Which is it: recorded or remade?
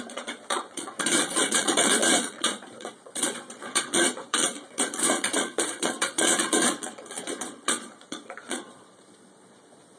remade